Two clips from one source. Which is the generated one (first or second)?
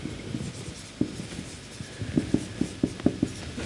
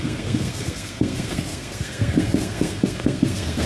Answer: second